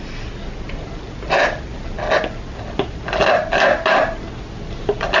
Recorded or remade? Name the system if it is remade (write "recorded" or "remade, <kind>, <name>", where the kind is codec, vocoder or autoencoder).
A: recorded